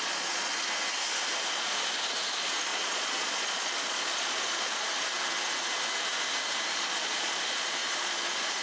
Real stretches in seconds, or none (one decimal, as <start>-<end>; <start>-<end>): 0.5-1.5; 4.9-6.7